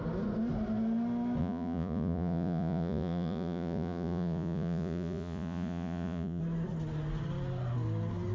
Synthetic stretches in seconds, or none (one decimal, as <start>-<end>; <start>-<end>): 1.4-6.4